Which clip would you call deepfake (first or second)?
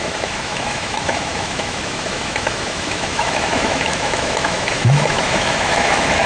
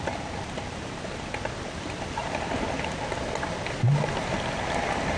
first